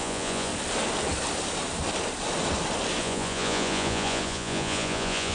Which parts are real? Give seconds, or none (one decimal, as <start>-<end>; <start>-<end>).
0.5-3.0